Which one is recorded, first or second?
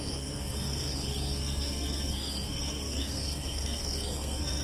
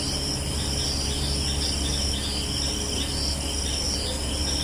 second